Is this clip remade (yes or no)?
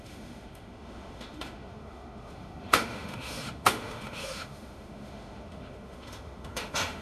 yes